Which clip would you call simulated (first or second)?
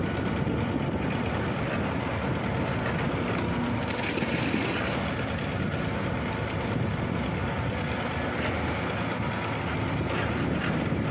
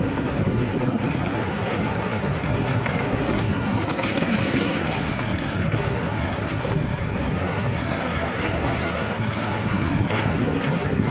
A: second